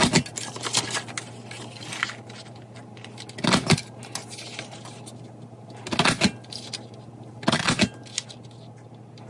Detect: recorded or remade recorded